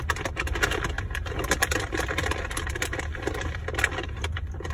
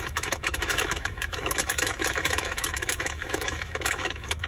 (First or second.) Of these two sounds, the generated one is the second